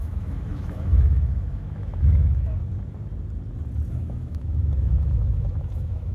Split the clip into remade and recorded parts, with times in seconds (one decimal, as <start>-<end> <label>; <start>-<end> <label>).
0.0-2.6 remade; 2.6-3.9 recorded; 3.9-6.1 remade